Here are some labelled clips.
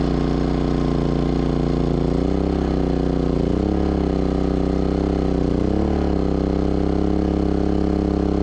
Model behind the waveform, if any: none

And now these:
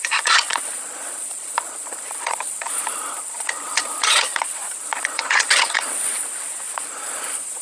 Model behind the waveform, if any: vocoder, Vocos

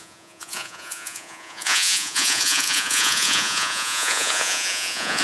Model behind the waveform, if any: vocoder, Vocos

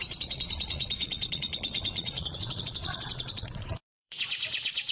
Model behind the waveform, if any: vocoder, Vocos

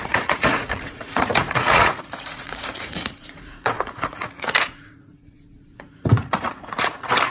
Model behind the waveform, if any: vocoder, Vocos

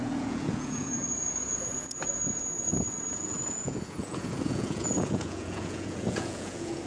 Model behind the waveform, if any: vocoder, Vocos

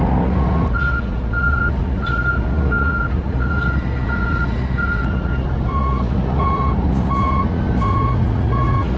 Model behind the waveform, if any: vocoder, Vocos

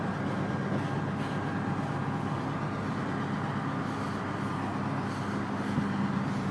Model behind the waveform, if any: none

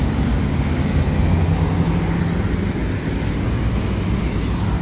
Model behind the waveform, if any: none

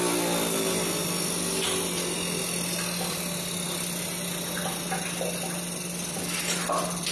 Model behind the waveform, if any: none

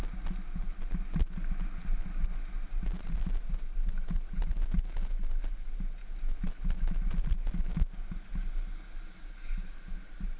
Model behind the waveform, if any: none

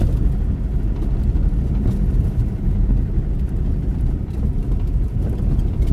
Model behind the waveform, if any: none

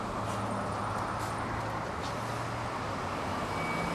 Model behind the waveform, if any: none